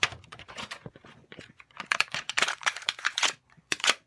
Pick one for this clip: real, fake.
fake